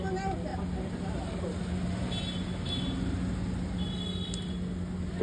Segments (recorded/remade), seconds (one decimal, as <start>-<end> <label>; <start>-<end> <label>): 0.0-5.2 recorded